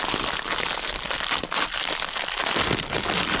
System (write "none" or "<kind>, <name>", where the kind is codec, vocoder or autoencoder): none